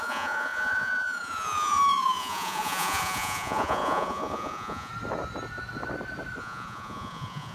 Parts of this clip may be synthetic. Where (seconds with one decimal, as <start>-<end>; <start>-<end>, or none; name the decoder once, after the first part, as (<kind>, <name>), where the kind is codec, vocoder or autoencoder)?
0.0-4.9 (vocoder, Vocos); 6.4-7.5